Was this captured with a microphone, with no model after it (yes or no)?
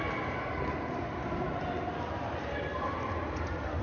yes